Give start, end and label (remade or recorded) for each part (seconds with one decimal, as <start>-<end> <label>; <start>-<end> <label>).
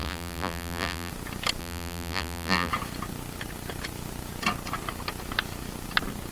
0.0-1.1 remade; 1.1-1.6 recorded; 1.6-2.7 remade; 2.7-6.3 recorded